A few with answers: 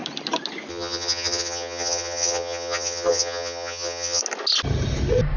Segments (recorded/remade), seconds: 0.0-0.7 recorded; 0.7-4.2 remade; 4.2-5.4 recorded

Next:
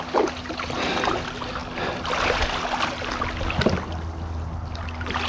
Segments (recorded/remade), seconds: 0.0-5.3 recorded